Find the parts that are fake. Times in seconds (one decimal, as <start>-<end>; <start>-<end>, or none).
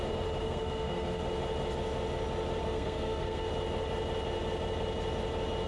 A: 0.4-1.2; 2.6-3.5